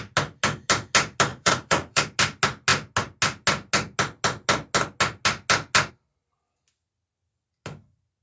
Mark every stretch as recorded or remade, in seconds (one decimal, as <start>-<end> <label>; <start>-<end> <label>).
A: 0.0-1.3 recorded; 1.3-2.0 remade; 2.0-8.2 recorded